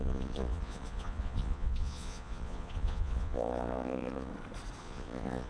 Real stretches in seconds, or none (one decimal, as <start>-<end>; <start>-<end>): 4.3-4.8